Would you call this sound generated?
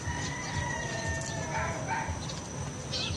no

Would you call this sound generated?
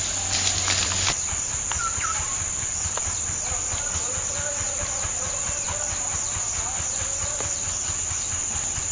no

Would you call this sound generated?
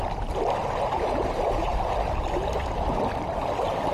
no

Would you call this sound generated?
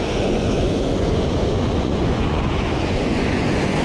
yes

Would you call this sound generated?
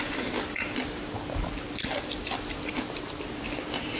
no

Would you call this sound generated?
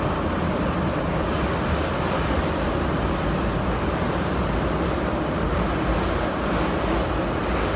no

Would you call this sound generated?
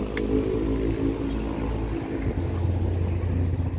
no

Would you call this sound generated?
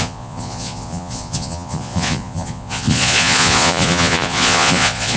yes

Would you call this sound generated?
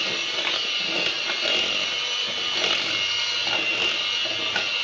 no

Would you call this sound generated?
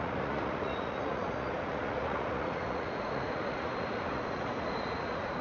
yes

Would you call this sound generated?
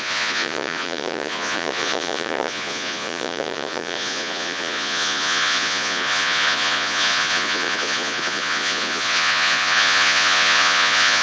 yes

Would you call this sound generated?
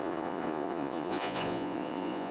yes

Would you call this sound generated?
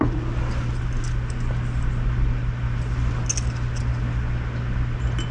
no